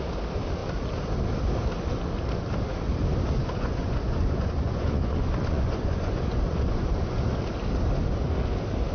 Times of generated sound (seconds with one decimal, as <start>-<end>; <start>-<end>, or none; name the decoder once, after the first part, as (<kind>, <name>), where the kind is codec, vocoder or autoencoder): 3.4-7.2 (vocoder, Vocos)

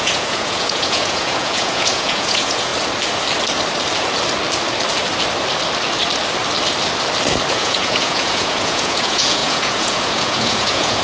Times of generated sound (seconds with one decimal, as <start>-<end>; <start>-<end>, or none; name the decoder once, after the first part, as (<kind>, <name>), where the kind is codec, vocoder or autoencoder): 0.0-2.7 (vocoder, Vocos); 7.5-11.0

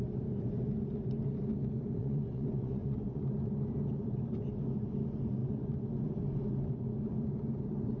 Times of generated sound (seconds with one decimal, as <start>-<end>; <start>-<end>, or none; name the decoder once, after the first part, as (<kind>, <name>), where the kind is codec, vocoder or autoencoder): 2.0-3.2 (vocoder, Vocos)